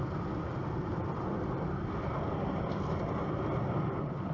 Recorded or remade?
recorded